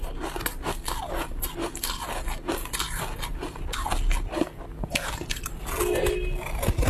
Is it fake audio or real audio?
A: real